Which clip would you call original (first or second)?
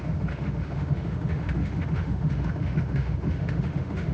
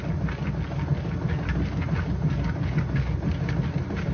second